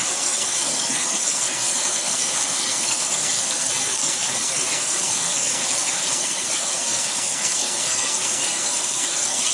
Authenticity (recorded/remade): remade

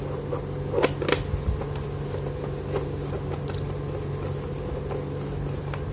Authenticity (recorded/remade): recorded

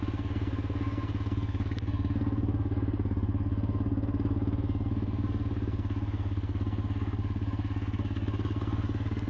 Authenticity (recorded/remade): remade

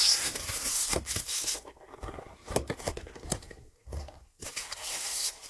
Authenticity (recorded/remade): remade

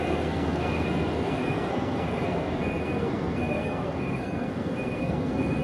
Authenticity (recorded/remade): remade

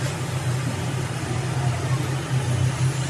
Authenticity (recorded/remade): recorded